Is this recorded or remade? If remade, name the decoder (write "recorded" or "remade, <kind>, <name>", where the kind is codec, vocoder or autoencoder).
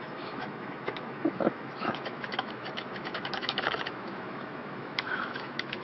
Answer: remade, autoencoder, DAC-VAE